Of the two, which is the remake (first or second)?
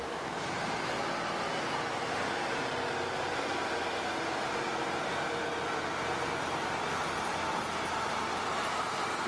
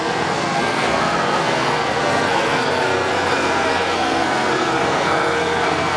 second